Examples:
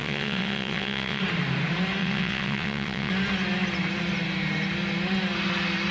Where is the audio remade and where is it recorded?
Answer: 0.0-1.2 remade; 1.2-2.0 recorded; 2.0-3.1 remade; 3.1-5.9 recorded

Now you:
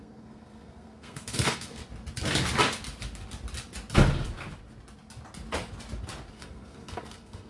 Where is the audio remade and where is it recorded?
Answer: 0.0-1.8 remade; 1.8-6.3 recorded; 6.3-7.5 remade

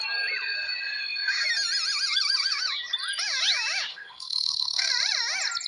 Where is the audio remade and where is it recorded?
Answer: 0.0-3.9 recorded; 3.9-4.9 remade; 4.9-5.7 recorded